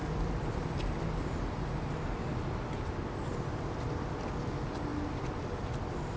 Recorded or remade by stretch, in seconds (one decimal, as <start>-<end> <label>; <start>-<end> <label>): 0.0-1.4 remade; 1.4-4.9 recorded; 4.9-6.2 remade